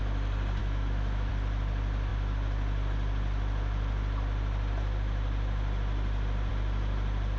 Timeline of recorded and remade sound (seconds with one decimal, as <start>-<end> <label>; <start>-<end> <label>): 0.0-0.6 recorded; 0.6-1.3 remade; 1.3-7.4 recorded